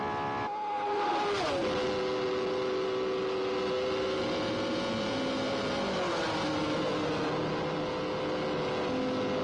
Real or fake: real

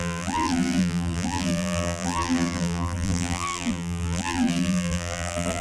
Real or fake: fake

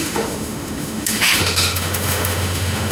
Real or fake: fake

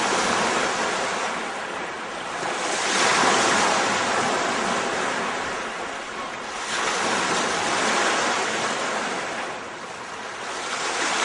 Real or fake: real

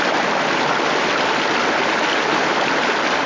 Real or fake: real